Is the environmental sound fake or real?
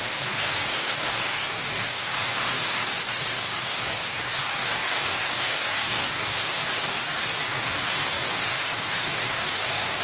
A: fake